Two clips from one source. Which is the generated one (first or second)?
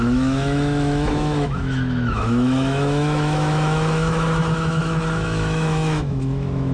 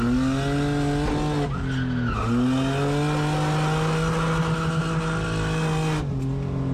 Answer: first